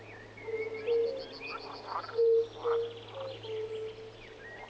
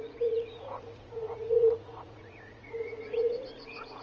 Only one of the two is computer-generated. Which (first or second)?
second